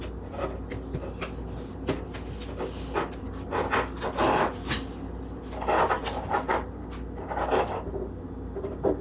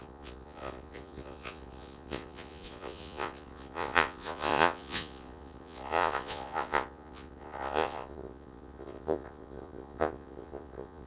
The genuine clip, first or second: first